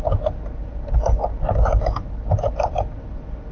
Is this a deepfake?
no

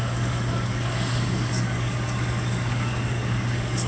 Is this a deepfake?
yes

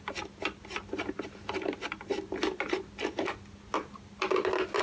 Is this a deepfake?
no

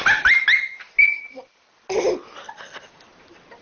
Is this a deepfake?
no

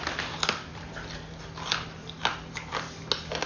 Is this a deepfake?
no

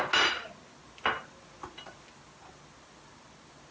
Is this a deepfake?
no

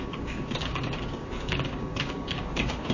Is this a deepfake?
yes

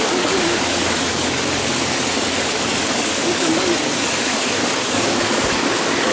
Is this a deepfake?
yes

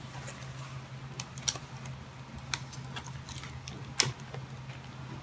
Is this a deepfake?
no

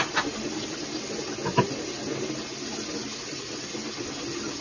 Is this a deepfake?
no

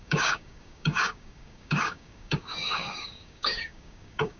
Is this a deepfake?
yes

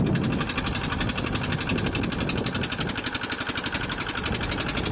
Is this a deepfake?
no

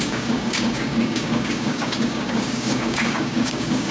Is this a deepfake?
yes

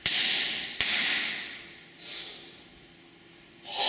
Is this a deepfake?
no